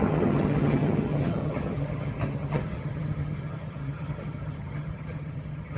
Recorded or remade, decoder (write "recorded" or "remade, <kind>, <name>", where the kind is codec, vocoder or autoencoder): remade, vocoder, HiFi-GAN